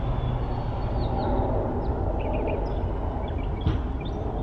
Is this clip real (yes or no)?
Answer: yes